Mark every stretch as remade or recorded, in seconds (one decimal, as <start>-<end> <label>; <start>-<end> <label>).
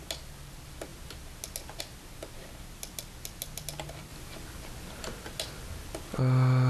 0.0-6.7 recorded